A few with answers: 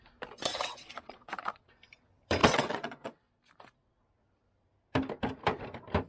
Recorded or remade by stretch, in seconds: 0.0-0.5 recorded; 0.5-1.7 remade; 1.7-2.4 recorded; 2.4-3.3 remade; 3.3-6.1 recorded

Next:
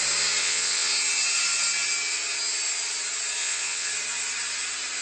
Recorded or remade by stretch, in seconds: 0.0-0.4 recorded; 0.4-0.9 remade; 0.9-3.4 recorded; 3.4-3.9 remade; 3.9-5.0 recorded

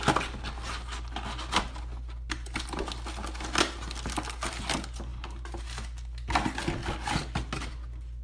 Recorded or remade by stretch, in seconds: 0.0-8.2 recorded

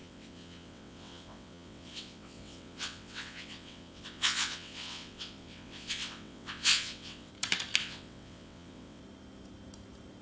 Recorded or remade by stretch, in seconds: 0.0-7.3 remade; 7.3-7.8 recorded; 7.8-9.0 remade; 9.0-10.2 recorded

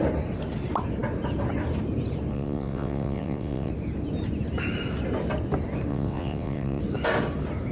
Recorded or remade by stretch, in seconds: 0.0-2.3 recorded; 2.3-3.7 remade; 3.7-5.9 recorded; 5.9-6.8 remade; 6.8-7.7 recorded

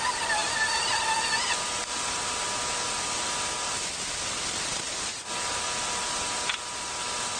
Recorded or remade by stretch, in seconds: 0.0-7.4 recorded

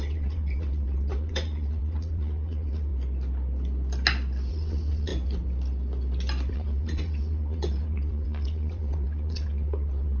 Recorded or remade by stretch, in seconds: 0.0-2.9 remade; 2.9-4.5 recorded; 4.5-5.1 remade; 5.1-6.5 recorded; 6.5-10.2 remade